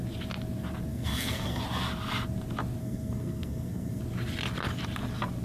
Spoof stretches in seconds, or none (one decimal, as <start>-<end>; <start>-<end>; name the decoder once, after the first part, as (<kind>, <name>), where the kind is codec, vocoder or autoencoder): 0.9-1.6 (codec, SNAC); 2.8-4.0